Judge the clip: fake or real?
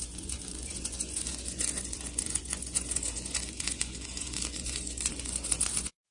fake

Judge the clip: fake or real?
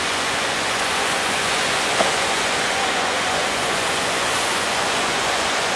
fake